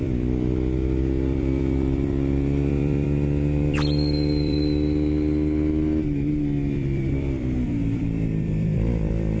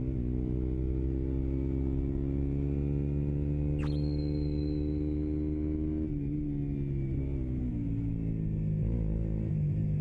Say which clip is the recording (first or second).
second